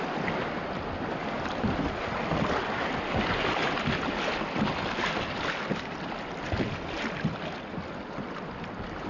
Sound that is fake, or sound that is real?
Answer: real